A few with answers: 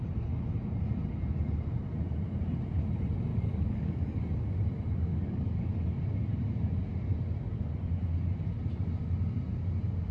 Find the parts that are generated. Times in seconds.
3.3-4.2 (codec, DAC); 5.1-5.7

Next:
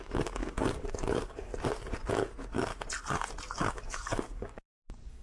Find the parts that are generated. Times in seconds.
0.0-1.5 (codec, DAC); 2.1-2.7; 3.7-5.2

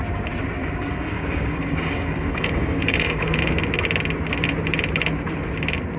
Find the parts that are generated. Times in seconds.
0.6-3.4 (codec, DAC)

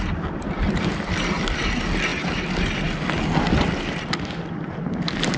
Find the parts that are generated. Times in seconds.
none

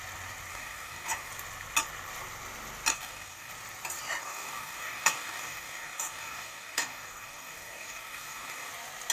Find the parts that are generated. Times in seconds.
0.5-1.3 (codec, DAC); 2.9-3.5; 4.2-8.7